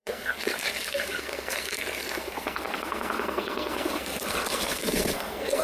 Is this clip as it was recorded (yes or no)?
no